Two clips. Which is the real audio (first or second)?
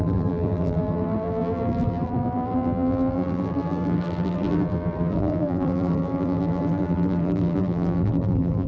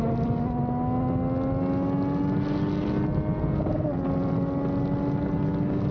second